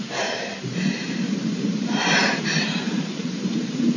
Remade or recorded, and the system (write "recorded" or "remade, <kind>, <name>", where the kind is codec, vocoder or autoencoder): remade, vocoder, BigVGAN v2